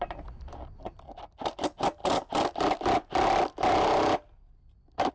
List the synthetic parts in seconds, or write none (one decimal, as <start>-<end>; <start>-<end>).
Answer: none